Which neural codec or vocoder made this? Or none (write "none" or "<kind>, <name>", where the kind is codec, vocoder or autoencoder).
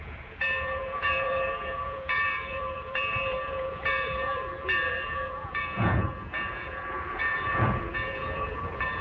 vocoder, Vocos